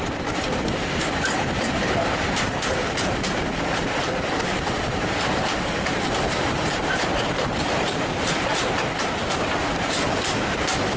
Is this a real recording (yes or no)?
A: no